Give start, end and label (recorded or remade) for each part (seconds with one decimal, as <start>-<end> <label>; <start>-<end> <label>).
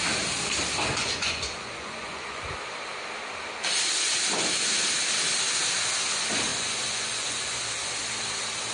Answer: 0.0-1.0 recorded; 1.0-2.4 remade; 2.4-6.5 recorded; 6.5-7.6 remade; 7.6-8.7 recorded